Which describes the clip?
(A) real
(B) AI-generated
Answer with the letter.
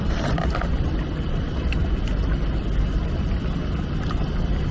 A